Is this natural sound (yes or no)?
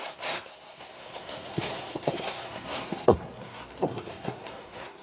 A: no